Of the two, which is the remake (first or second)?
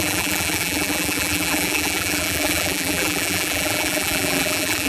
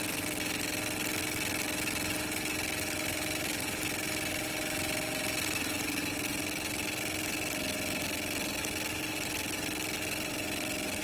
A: first